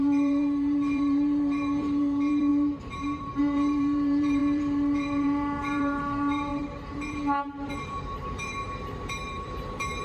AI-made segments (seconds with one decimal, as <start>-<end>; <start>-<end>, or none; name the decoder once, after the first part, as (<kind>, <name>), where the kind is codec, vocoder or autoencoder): 0.0-10.0 (vocoder, BigVGAN v2)